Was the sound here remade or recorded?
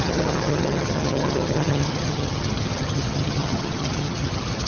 remade